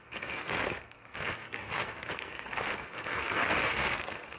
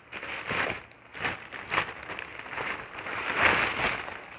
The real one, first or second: second